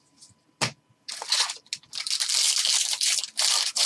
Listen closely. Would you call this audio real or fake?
real